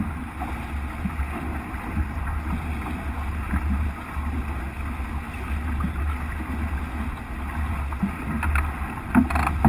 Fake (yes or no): no